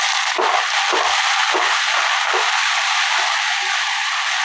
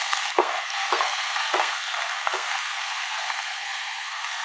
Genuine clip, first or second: first